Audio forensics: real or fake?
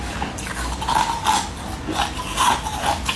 real